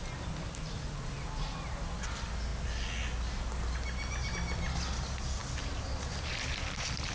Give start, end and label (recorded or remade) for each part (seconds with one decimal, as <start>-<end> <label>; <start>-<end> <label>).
0.0-7.1 recorded